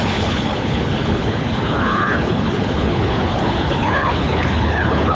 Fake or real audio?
fake